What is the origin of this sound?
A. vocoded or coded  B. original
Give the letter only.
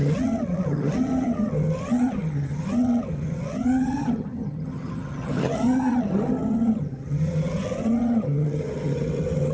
A